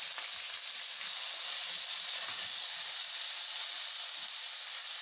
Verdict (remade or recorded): recorded